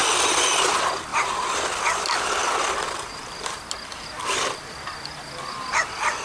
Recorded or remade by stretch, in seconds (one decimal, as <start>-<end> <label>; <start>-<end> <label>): 0.0-1.1 remade; 1.1-2.0 recorded; 2.0-6.2 remade